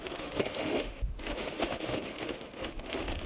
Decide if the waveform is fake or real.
fake